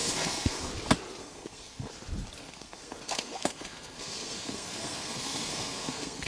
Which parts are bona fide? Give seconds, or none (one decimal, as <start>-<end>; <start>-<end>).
0.7-1.2; 1.9-2.4